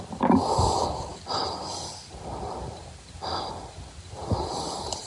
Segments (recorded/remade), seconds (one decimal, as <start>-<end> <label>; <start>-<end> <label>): 0.0-5.1 recorded